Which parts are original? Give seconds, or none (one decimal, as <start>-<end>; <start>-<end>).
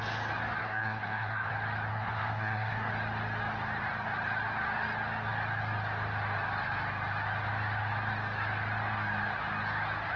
0.0-0.6; 1.5-1.9; 2.9-10.2